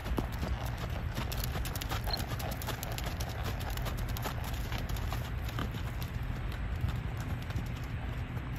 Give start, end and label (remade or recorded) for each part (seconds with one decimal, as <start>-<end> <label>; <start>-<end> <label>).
0.0-8.6 recorded